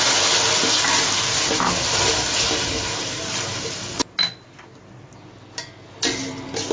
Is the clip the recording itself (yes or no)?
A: yes